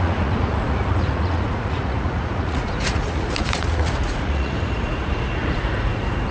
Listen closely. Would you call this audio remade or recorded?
remade